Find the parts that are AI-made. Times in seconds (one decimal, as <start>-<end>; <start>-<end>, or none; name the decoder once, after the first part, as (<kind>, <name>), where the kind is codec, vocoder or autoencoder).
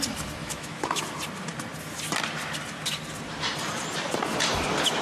0.4-1.0 (autoencoder, DAC-VAE)